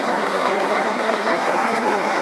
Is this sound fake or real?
fake